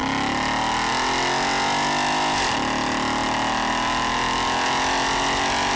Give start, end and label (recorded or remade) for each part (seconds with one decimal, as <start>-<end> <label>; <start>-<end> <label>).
0.0-5.8 recorded